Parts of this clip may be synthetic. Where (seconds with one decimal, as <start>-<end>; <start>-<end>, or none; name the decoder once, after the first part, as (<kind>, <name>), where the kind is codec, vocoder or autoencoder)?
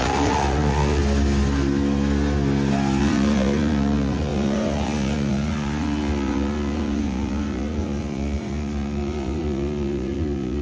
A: 0.0-1.0 (vocoder, Vocos); 3.0-10.6